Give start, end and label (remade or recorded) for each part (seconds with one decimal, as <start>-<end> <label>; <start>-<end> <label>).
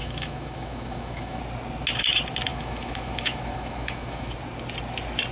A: 0.0-1.4 remade; 1.4-2.5 recorded; 2.5-4.3 remade; 4.3-5.3 recorded